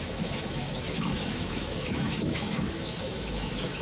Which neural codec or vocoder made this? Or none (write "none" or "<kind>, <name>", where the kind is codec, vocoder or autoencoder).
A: autoencoder, DAC-VAE